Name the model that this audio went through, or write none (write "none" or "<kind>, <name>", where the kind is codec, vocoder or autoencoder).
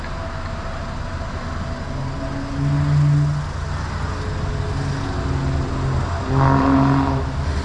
none